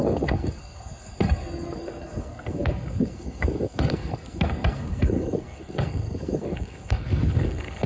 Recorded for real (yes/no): no